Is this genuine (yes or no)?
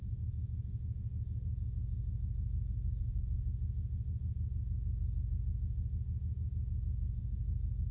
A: yes